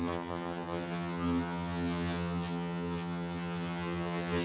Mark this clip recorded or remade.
remade